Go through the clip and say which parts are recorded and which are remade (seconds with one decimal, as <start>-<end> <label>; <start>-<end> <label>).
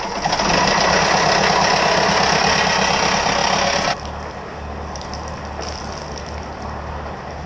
0.0-7.5 recorded